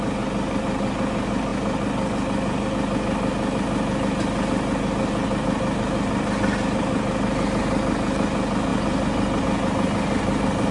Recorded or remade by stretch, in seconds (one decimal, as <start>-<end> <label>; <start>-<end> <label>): 0.0-10.7 recorded